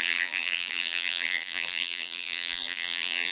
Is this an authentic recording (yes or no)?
no